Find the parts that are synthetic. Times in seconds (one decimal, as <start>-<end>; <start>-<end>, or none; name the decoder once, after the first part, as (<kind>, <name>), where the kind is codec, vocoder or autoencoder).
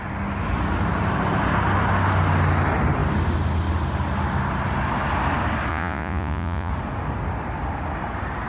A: 5.7-6.7 (vocoder, Vocos)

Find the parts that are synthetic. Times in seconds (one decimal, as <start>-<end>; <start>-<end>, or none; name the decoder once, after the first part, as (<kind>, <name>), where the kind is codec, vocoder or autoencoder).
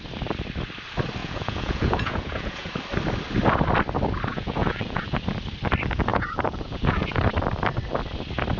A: 1.2-2.7 (vocoder, Vocos); 4.3-5.2; 6.1-7.2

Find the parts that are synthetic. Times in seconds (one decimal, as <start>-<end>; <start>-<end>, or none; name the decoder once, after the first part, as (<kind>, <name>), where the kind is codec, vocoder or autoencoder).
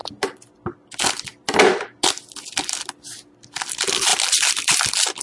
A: none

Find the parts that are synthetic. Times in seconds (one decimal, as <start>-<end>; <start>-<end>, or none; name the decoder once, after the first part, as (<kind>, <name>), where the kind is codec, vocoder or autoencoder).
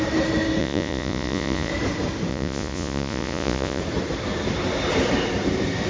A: 0.6-1.7 (vocoder, Vocos); 2.3-3.8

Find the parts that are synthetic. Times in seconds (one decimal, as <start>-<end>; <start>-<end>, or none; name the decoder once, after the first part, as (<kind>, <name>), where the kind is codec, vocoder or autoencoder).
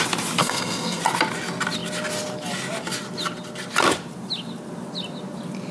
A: 0.4-1.0 (codec, SNAC)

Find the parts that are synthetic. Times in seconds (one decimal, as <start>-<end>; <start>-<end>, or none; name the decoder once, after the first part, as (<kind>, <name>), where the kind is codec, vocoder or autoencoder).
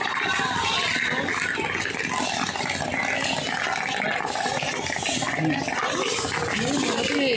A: none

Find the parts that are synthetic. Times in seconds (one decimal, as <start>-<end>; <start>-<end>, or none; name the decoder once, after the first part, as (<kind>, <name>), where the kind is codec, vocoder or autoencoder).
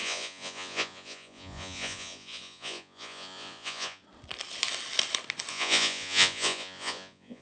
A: 0.0-4.0 (vocoder, Vocos); 5.5-7.4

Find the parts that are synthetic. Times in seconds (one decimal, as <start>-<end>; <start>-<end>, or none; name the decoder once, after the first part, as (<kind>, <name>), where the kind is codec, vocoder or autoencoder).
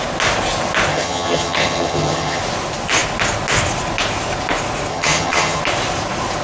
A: 0.9-2.4 (vocoder, HiFi-GAN); 4.9-5.6